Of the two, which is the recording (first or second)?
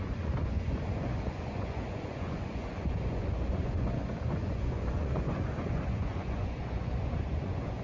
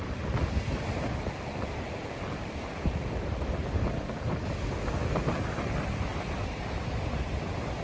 second